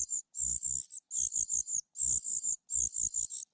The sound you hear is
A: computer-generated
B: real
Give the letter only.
B